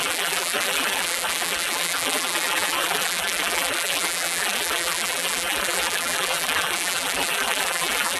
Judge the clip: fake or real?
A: fake